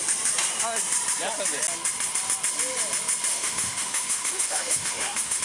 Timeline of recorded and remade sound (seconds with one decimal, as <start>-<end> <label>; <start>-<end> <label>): 0.0-3.3 recorded; 3.3-5.4 remade